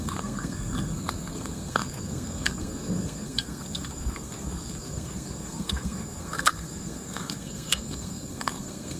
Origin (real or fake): fake